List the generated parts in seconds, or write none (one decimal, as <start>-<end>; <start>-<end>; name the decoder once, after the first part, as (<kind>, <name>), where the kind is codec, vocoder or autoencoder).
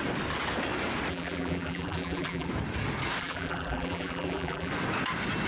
1.1-2.5 (vocoder, BigVGAN v2); 3.2-4.7